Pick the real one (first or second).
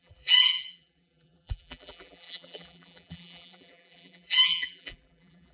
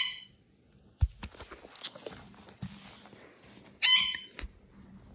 second